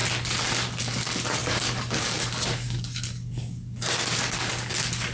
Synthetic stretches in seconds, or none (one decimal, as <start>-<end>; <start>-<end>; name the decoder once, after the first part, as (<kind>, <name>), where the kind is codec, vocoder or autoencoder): 0.8-5.1 (codec, DAC)